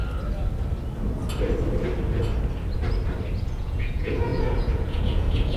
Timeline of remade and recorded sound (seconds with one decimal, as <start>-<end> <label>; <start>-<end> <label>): 0.0-3.4 recorded; 3.4-5.6 remade